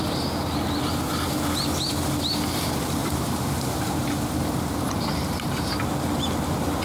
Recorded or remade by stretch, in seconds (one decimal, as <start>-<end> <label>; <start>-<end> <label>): 0.0-3.0 recorded; 3.0-4.2 remade; 4.2-6.8 recorded